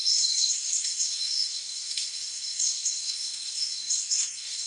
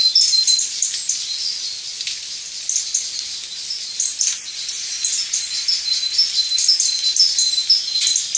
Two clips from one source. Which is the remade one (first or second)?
first